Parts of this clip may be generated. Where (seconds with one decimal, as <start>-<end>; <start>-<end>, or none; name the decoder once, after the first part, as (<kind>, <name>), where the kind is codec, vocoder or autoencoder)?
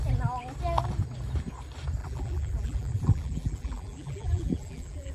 2.0-5.1 (vocoder, BigVGAN v2)